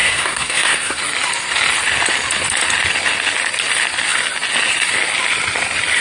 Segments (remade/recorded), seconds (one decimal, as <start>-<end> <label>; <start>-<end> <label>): 0.0-1.0 remade; 1.0-6.0 recorded